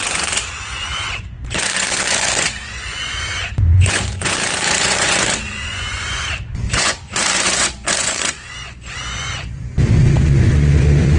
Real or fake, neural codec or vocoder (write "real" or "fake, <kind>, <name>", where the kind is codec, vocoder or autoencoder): fake, vocoder, Vocos